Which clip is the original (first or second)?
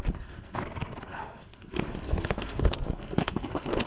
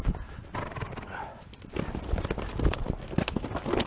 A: second